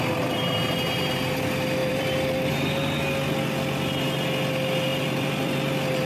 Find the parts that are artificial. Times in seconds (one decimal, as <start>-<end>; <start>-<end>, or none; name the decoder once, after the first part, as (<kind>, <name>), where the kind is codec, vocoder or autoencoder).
1.8-2.5 (vocoder, BigVGAN v2); 4.9-6.0